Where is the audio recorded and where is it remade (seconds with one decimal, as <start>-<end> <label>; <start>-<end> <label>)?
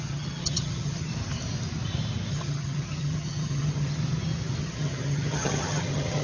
0.0-1.1 remade; 1.1-2.3 recorded; 2.3-4.0 remade; 4.0-4.6 recorded; 4.6-6.2 remade